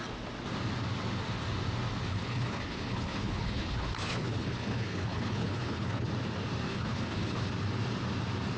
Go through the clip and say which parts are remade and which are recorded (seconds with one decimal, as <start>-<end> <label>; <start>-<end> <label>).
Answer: 0.0-2.1 recorded; 2.1-6.1 remade; 6.1-6.7 recorded; 6.7-7.5 remade; 7.5-8.6 recorded